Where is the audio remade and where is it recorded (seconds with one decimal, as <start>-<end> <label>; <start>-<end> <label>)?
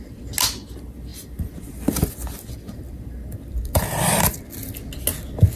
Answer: 0.0-1.1 recorded; 1.1-4.5 remade; 4.5-5.6 recorded